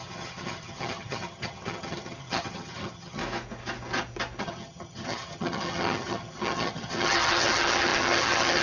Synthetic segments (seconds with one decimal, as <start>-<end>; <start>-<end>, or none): 0.0-3.2; 4.4-8.6